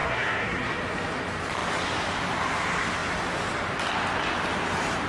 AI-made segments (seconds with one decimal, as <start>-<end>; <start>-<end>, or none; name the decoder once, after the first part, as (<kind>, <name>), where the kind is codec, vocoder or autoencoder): 0.0-0.7 (codec, SNAC)